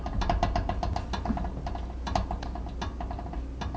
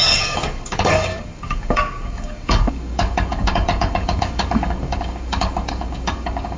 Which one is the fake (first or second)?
second